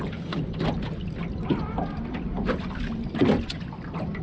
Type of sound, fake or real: real